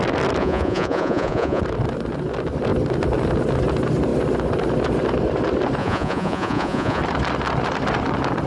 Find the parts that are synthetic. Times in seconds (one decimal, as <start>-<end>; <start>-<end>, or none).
0.4-1.6; 5.8-7.0